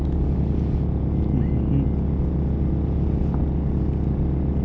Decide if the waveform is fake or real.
real